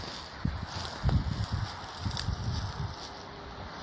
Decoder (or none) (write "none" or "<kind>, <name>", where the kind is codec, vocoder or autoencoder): none